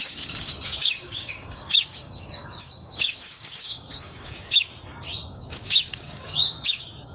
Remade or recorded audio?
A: remade